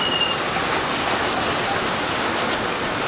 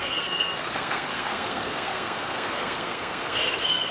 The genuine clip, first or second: first